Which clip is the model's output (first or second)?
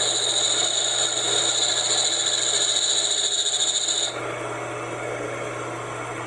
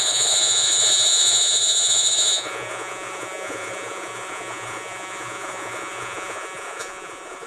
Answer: second